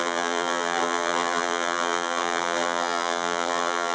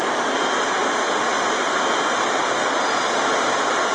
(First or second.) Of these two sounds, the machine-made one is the first